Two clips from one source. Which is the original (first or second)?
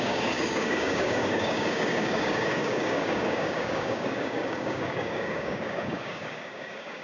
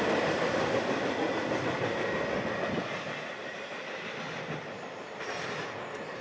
second